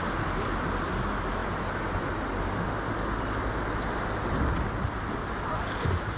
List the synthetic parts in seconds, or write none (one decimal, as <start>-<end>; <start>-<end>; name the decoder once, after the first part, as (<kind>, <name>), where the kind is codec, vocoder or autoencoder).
none